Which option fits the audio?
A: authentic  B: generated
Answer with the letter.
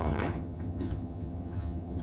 B